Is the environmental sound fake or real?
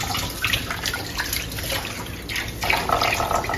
real